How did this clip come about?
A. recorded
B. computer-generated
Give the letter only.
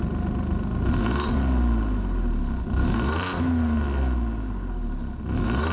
A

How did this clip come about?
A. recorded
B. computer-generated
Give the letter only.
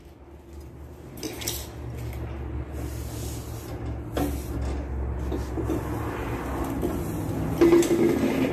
A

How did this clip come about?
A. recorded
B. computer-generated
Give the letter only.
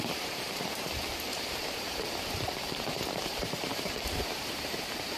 B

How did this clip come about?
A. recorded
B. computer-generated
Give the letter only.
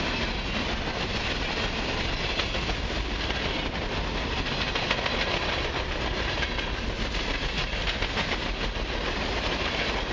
A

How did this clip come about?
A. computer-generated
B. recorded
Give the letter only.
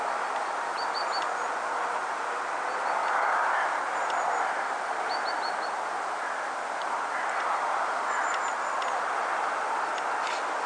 B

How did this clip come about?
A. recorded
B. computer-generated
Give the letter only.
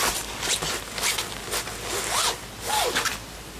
A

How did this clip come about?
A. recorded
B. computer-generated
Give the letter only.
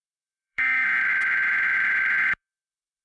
B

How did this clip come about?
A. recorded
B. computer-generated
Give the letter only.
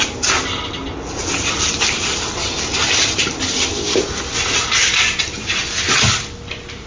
A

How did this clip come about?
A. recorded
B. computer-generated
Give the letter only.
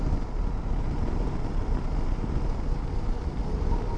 A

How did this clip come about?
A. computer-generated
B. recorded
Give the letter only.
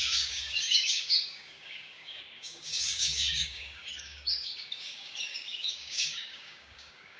A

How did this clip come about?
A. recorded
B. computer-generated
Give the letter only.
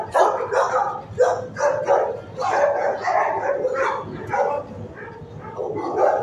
A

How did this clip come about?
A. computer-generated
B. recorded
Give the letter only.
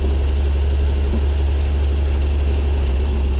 B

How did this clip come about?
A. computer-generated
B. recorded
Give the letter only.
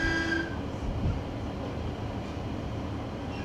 B